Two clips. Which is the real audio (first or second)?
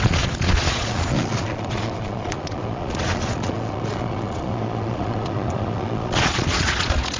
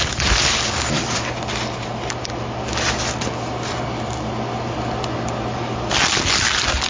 second